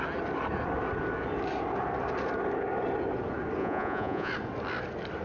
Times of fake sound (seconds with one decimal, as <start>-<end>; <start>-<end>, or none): 3.6-4.3